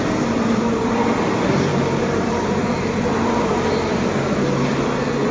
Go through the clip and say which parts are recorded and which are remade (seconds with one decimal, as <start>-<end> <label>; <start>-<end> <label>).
0.0-5.3 recorded